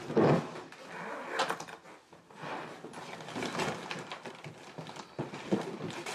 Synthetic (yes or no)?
no